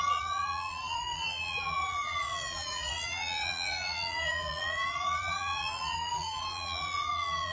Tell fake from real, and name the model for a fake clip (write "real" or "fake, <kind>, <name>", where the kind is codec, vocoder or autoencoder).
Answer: fake, vocoder, Vocos